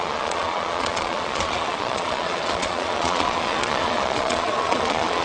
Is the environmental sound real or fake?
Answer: fake